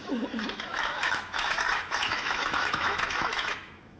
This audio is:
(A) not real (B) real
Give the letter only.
A